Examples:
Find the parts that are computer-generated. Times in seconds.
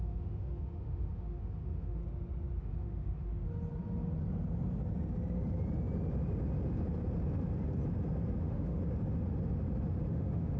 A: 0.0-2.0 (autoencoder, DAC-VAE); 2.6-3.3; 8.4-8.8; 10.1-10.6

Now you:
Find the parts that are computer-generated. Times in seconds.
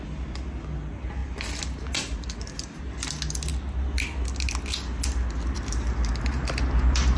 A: none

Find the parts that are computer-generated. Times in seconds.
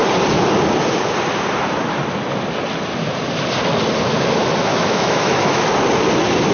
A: 4.7-5.6 (autoencoder, DAC-VAE)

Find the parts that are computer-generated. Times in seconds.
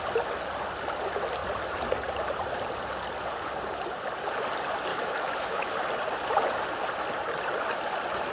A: 4.9-5.7 (autoencoder, DAC-VAE)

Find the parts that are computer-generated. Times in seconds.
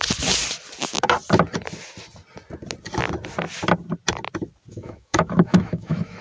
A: 4.7-6.2 (autoencoder, DAC-VAE)